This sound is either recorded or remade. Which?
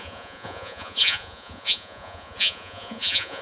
remade